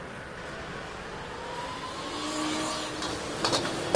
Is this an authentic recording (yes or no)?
yes